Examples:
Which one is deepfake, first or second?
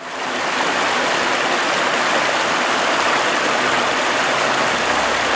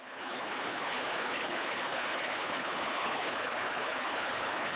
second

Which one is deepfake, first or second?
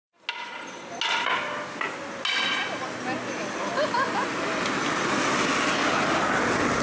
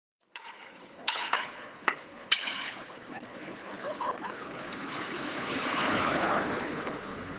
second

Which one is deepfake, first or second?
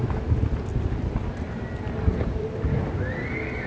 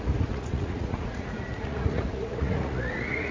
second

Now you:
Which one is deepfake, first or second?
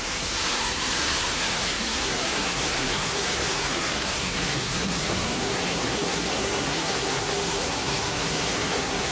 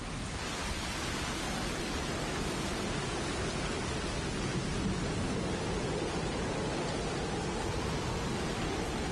first